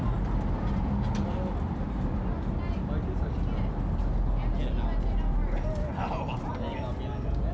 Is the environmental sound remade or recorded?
recorded